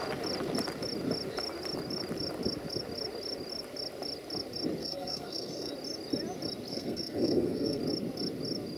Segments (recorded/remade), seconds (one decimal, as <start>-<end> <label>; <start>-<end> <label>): 0.0-4.8 recorded; 4.8-5.7 remade; 5.7-6.7 recorded; 6.7-7.8 remade; 7.8-8.8 recorded